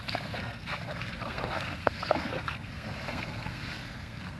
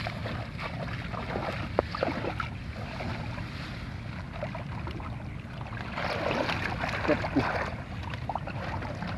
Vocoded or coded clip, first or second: first